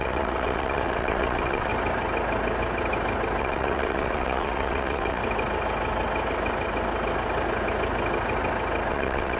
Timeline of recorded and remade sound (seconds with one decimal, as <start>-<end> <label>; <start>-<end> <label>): 0.0-1.7 remade; 1.7-3.4 recorded; 3.4-5.2 remade; 5.2-8.9 recorded; 8.9-9.4 remade